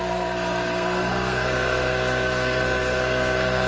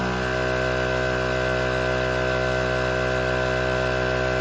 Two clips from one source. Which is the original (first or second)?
second